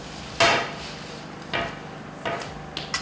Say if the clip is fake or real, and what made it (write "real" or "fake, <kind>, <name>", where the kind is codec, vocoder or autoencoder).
real